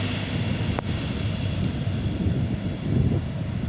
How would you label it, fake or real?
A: real